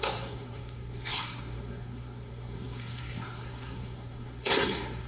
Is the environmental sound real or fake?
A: fake